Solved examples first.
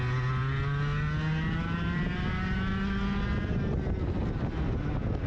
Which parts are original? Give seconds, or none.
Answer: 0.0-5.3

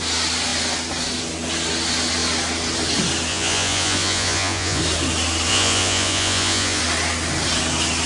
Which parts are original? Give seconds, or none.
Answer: 0.0-3.3; 4.8-5.5; 6.8-8.1

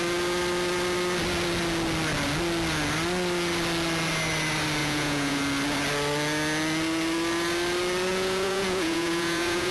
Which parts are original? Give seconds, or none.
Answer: 0.0-4.8; 5.4-8.1

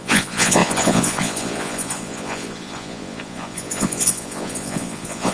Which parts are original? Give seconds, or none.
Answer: none

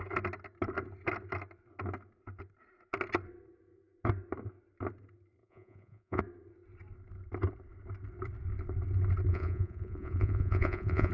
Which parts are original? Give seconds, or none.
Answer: 0.0-5.4; 6.2-9.3